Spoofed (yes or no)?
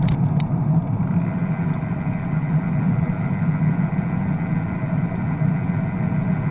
no